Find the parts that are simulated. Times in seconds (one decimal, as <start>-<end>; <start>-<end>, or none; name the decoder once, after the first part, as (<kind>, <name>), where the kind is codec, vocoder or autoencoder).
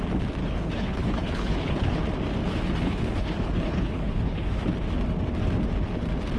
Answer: 0.4-2.0 (codec, HILCodec); 2.8-4.6